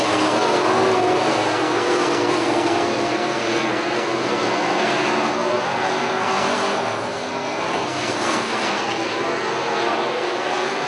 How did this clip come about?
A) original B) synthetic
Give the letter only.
B